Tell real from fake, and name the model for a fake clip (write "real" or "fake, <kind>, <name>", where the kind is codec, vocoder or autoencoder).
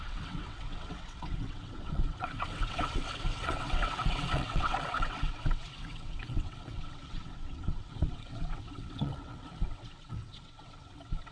fake, vocoder, WaveNeXt